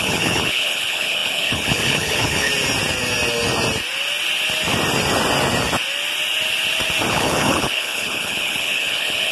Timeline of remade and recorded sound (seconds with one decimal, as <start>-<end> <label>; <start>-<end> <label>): 0.0-2.5 remade; 2.5-7.1 recorded; 7.1-9.3 remade